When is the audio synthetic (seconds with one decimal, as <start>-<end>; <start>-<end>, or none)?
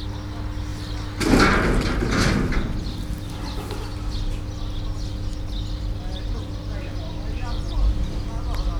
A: none